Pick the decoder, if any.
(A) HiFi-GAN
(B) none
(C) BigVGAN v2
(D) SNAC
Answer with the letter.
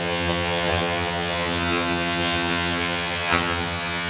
A